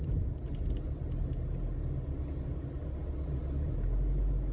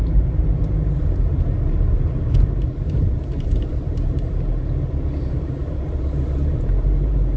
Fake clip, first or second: second